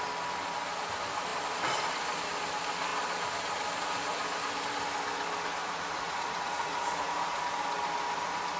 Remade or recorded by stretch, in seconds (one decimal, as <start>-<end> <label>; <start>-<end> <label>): 0.0-5.6 recorded; 5.6-7.4 remade; 7.4-8.6 recorded